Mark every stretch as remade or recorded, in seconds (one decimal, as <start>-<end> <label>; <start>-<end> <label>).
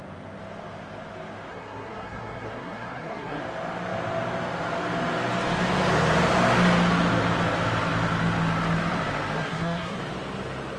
0.0-1.5 recorded; 1.5-3.4 remade; 3.4-9.4 recorded; 9.4-10.0 remade; 10.0-10.8 recorded